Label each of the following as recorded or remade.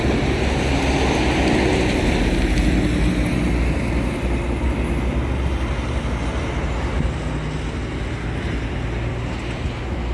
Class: recorded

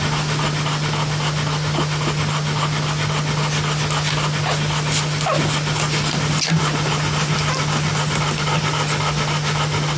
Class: recorded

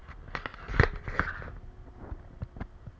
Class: recorded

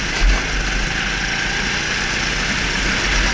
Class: recorded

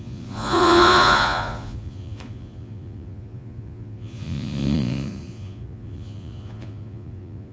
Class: remade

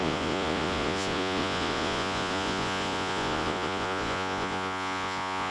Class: remade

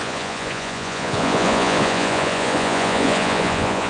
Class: remade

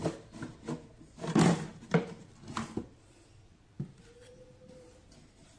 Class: recorded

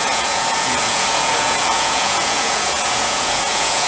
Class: remade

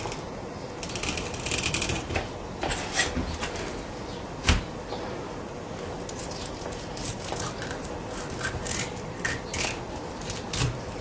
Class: recorded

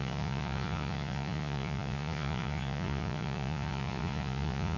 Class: remade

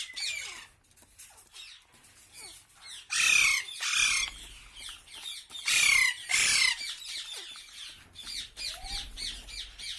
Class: recorded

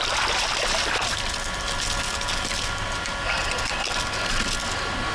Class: recorded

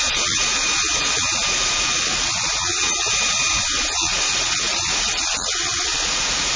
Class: remade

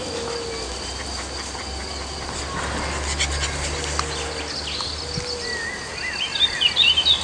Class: recorded